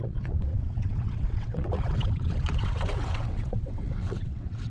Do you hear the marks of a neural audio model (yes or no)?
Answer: yes